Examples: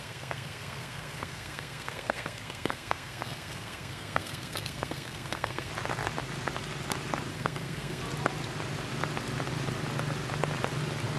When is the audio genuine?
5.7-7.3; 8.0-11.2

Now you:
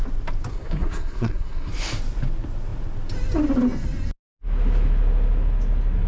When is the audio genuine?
0.0-0.5; 1.7-6.1